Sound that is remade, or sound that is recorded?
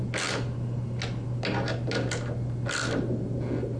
recorded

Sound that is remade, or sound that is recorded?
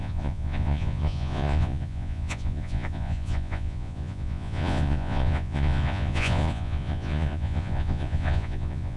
remade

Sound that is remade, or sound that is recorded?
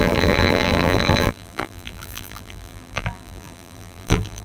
remade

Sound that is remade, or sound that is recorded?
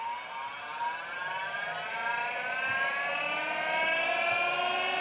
recorded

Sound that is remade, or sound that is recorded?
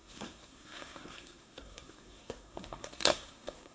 remade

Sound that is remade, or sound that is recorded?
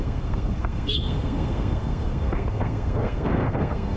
remade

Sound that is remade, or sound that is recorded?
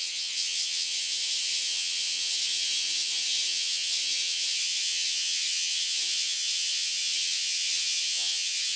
remade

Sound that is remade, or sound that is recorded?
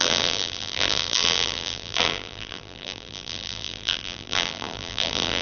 remade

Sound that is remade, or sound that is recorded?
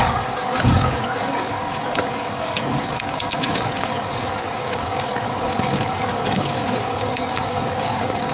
remade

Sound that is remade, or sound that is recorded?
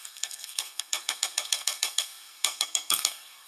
remade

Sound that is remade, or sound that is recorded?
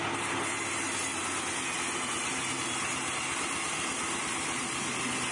recorded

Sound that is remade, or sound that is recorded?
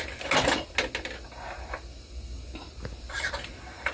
recorded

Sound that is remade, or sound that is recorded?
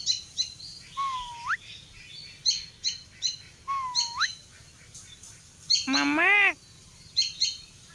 recorded